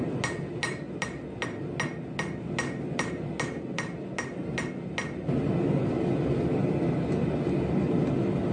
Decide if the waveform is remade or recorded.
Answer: recorded